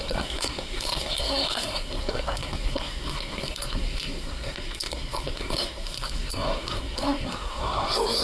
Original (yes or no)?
no